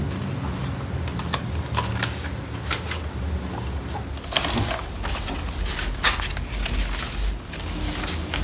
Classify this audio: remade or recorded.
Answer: recorded